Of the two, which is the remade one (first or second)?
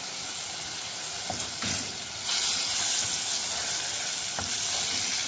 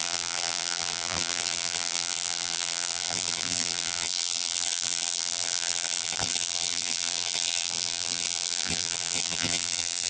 second